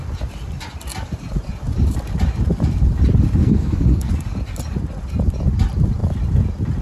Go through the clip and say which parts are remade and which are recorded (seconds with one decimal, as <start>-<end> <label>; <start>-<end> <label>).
0.0-3.4 recorded; 3.4-4.1 remade; 4.1-6.8 recorded